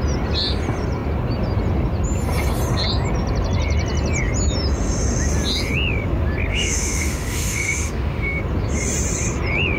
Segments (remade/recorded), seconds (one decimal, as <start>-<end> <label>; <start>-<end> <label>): 0.0-6.5 recorded; 6.5-8.4 remade; 8.4-9.8 recorded